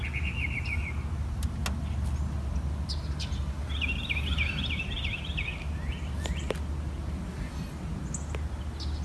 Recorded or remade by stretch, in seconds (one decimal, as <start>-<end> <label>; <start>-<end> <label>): 0.0-9.0 recorded